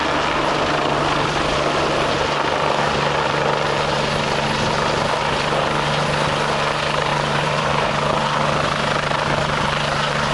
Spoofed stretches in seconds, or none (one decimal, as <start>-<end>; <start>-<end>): 7.1-7.9